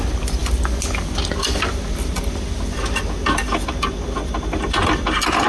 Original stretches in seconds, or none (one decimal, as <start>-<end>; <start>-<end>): 0.0-5.5